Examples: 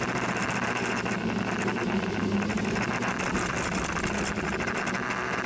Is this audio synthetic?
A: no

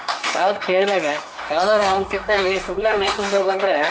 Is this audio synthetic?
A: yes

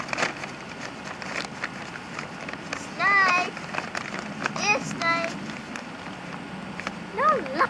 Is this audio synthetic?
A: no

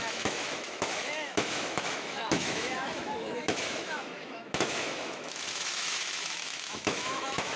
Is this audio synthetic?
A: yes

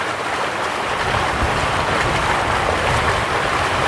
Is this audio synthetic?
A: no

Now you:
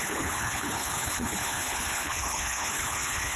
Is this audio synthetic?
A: yes